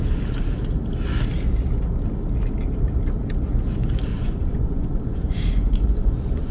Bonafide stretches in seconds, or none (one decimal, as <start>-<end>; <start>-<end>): 0.0-4.1